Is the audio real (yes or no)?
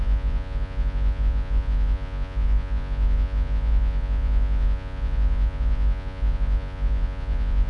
no